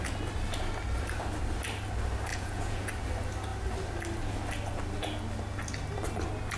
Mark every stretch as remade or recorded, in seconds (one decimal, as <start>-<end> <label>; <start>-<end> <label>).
0.0-2.3 recorded; 2.3-2.9 remade; 2.9-6.6 recorded